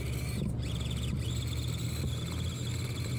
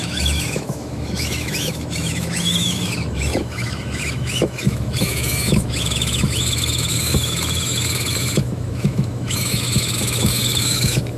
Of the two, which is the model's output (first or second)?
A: second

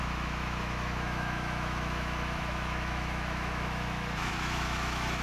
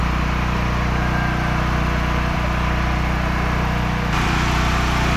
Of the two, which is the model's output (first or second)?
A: first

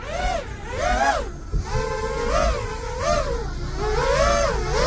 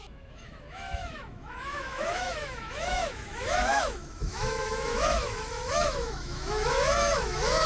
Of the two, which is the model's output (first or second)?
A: second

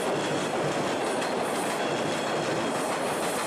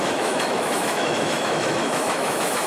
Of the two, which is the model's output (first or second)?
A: second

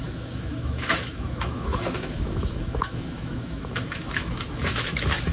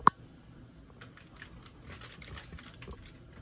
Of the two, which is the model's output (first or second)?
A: first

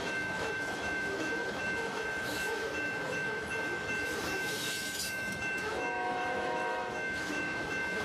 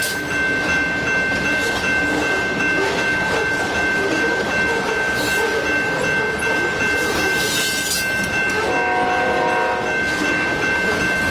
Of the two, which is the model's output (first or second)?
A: first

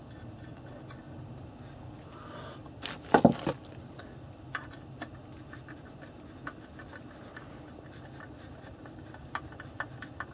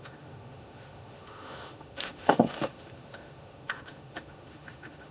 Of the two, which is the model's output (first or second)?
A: second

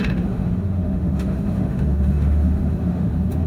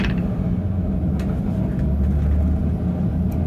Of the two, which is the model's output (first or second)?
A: first